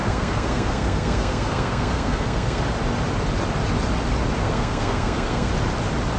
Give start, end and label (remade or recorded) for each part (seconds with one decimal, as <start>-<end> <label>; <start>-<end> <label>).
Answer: 0.0-2.6 remade; 2.6-4.4 recorded; 4.4-5.5 remade; 5.5-6.2 recorded